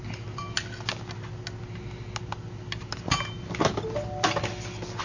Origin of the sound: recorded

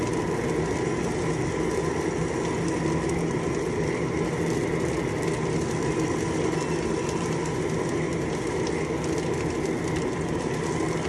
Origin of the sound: recorded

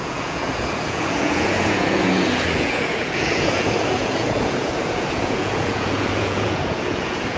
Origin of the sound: remade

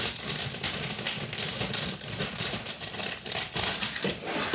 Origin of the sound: recorded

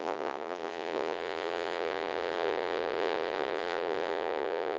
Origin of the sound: remade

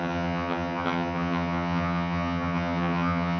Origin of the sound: remade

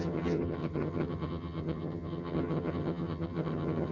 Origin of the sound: remade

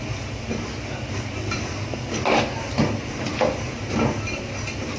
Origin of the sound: recorded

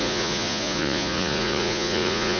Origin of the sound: remade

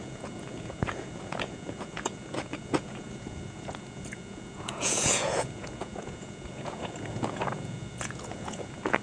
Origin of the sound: remade